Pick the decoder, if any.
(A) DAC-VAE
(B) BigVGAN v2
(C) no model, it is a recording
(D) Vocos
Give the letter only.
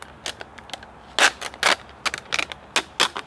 C